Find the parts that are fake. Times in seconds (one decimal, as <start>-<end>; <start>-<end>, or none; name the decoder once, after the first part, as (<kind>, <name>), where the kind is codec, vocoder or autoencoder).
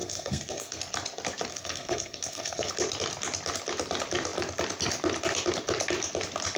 0.0-0.8 (codec, SNAC); 1.5-2.7